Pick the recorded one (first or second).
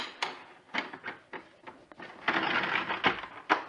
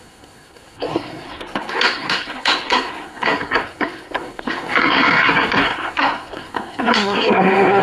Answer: first